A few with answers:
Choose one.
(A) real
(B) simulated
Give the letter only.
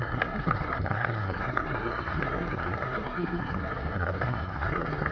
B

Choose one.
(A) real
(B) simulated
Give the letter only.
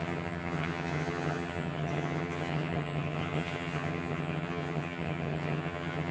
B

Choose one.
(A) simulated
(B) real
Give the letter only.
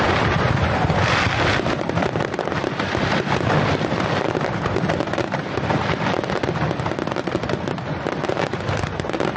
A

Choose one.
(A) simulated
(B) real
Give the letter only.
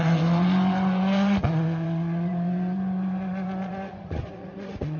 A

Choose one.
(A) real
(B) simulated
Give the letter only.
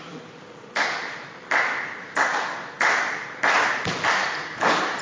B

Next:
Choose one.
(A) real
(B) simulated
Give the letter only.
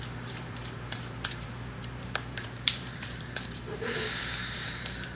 B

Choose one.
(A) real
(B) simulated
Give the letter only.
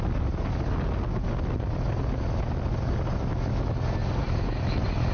A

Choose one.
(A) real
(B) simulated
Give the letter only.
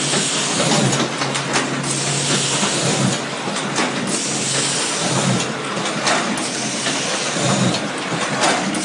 A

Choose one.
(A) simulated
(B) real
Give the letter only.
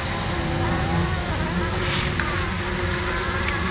B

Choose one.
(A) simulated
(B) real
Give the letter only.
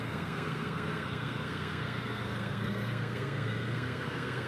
A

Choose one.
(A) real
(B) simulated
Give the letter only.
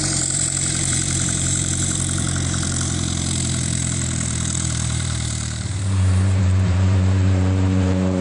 B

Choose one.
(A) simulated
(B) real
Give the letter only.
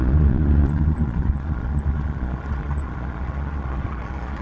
A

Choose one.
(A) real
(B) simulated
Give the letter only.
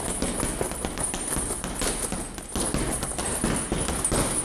A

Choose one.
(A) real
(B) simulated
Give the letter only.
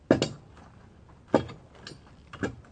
A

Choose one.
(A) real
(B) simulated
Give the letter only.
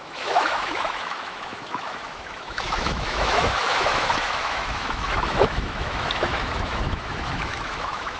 B